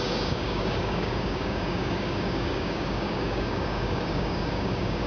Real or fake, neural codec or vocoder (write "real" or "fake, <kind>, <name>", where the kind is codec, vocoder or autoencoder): fake, codec, DAC